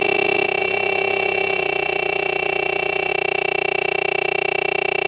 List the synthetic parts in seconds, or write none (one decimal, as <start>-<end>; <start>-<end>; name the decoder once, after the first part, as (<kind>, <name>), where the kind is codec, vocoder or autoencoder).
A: 0.6-3.1 (vocoder, BigVGAN v2)